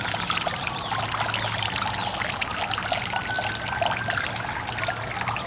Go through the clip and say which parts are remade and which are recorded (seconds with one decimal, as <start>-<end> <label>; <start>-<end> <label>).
0.0-5.5 recorded